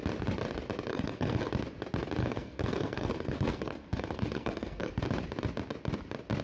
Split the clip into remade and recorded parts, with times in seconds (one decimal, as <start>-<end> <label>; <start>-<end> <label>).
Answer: 0.0-0.9 recorded; 0.9-1.5 remade; 1.5-2.2 recorded; 2.2-4.9 remade; 4.9-6.4 recorded